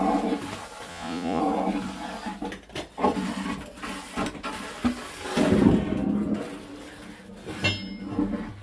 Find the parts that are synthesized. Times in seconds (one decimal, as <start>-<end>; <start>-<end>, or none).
0.9-1.4